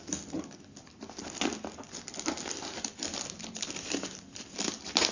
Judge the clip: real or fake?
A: real